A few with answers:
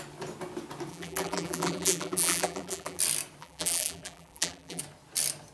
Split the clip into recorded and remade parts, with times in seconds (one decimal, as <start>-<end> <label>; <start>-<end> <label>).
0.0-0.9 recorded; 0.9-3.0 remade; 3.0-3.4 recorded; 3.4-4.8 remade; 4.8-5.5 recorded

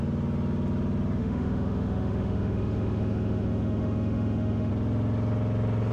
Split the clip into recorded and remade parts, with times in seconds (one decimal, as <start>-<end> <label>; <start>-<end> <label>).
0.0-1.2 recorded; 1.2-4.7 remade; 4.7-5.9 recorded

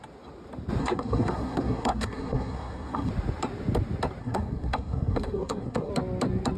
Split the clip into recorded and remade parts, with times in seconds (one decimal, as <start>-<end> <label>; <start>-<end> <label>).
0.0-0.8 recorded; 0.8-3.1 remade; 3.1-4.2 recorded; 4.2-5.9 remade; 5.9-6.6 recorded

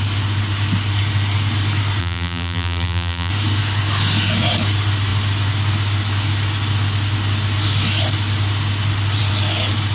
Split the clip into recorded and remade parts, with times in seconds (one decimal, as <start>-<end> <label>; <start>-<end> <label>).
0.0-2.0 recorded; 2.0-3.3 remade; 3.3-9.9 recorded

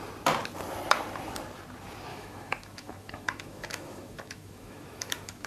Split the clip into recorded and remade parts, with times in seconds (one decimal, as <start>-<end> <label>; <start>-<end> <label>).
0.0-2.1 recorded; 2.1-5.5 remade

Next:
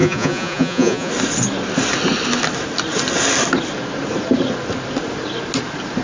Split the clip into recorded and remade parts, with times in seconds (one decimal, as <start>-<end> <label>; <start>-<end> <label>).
0.0-1.1 remade; 1.1-6.0 recorded